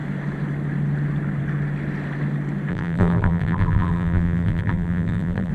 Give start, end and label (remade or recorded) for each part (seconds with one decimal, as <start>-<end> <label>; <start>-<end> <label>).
0.0-2.7 recorded; 2.7-5.5 remade